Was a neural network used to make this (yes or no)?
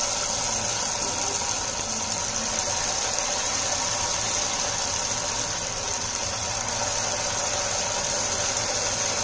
no